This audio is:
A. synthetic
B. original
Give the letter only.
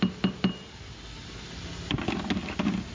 B